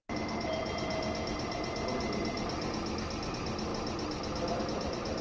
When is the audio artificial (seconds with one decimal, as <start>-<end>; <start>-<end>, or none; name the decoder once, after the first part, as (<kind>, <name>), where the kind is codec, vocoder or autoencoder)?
none